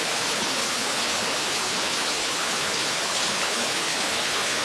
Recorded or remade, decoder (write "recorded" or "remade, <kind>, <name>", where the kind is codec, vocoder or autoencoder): remade, codec, HILCodec